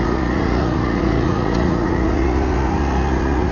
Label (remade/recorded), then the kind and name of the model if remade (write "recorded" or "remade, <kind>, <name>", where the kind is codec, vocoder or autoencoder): remade, vocoder, Vocos